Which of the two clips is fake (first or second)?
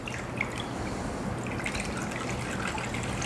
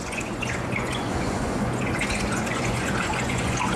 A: second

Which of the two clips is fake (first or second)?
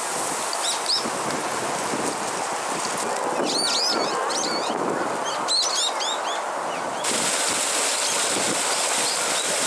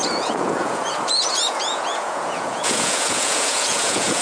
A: second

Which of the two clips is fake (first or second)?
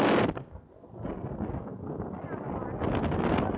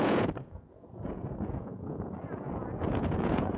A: second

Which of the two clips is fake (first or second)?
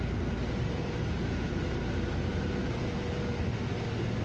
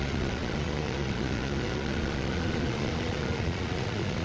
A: second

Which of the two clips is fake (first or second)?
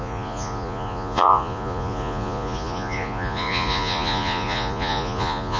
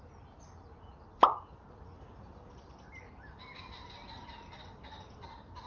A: first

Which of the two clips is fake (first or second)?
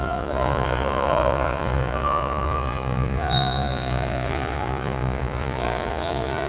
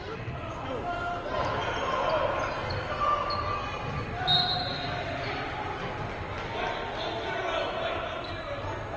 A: first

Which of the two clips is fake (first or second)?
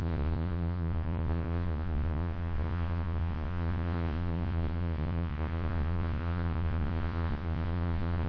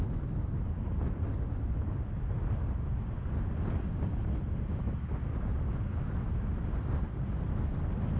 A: first